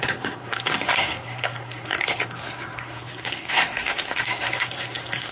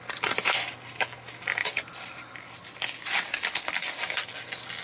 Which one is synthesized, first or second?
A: first